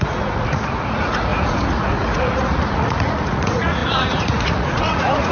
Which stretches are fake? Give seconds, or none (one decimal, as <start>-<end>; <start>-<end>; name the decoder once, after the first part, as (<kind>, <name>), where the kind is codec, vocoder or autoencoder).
0.0-5.3 (vocoder, Vocos)